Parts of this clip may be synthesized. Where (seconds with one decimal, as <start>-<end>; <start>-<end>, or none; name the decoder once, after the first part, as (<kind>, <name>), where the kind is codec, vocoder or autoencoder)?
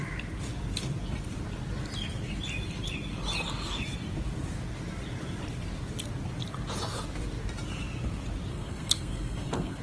8.5-9.8 (codec, SNAC)